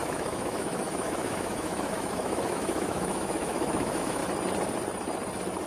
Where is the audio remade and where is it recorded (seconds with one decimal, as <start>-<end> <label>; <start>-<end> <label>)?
0.0-4.2 remade; 4.2-5.7 recorded